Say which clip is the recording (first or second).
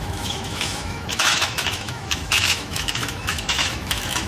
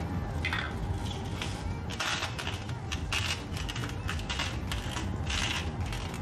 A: second